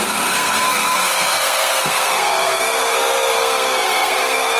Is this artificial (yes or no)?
yes